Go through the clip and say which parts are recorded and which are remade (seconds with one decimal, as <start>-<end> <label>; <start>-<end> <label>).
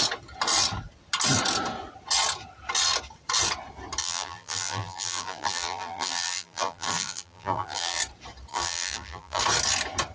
0.0-4.0 recorded; 4.0-8.0 remade; 8.0-8.5 recorded; 8.5-9.4 remade; 9.4-10.1 recorded